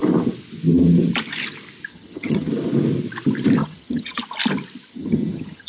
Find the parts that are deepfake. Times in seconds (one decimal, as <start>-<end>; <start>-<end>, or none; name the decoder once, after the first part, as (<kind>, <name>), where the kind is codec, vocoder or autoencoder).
1.9-2.5 (vocoder, HiFi-GAN); 3.6-4.2; 4.9-5.7